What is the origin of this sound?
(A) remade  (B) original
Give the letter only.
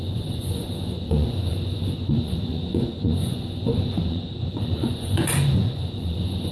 A